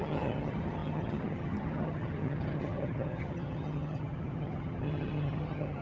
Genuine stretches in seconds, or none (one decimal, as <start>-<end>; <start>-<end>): none